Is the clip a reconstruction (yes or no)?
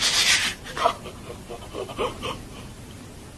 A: no